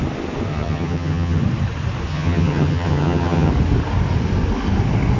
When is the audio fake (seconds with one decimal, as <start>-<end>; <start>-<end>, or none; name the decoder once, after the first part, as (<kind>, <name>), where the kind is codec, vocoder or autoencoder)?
0.5-1.4 (vocoder, HiFi-GAN); 2.1-3.5